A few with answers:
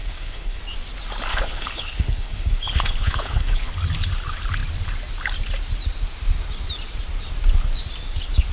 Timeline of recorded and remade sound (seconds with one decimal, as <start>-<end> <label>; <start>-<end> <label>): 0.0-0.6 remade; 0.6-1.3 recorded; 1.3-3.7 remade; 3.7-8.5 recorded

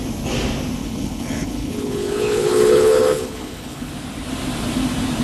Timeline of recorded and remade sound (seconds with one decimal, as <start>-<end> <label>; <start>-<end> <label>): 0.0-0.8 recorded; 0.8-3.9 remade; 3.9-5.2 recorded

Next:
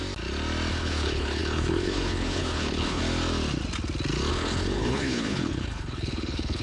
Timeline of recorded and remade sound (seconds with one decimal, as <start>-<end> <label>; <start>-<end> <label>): 0.0-0.7 recorded; 0.7-3.0 remade; 3.0-4.3 recorded; 4.3-6.6 remade

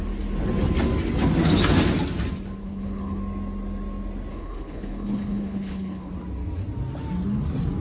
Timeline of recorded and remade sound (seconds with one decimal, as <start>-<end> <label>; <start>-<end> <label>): 0.0-2.6 recorded; 2.6-3.2 remade; 3.2-4.3 recorded; 4.3-6.1 remade; 6.1-7.8 recorded